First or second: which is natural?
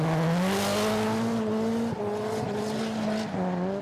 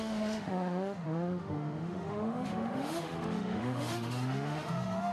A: first